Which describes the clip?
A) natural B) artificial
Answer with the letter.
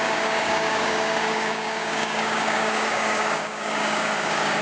B